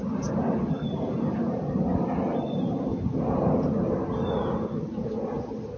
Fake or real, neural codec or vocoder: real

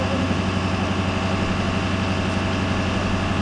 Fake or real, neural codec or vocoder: real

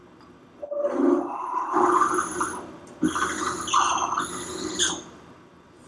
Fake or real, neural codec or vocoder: real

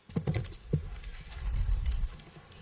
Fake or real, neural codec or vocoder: real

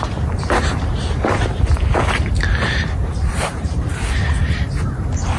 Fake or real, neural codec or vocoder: fake, vocoder, BigVGAN v2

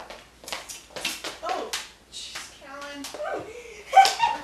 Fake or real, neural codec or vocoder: real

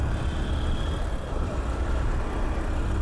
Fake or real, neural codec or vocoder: real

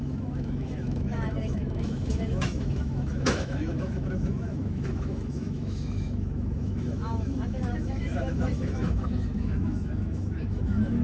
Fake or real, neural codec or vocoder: fake, autoencoder, DAC-VAE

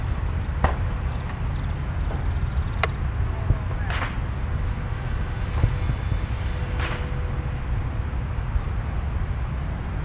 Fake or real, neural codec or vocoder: real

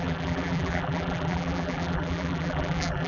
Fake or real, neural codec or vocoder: fake, vocoder, BigVGAN v2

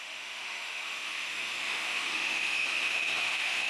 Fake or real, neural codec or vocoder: fake, autoencoder, DAC-VAE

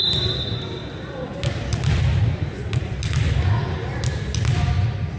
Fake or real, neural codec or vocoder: real